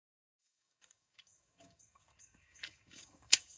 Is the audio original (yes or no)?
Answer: no